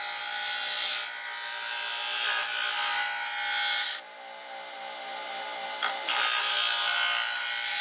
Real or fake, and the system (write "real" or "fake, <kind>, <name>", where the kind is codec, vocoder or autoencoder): real